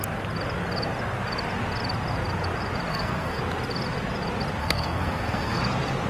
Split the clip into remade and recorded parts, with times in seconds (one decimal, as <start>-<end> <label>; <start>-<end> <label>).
0.0-2.9 recorded; 2.9-3.4 remade; 3.4-4.6 recorded; 4.6-5.6 remade; 5.6-6.1 recorded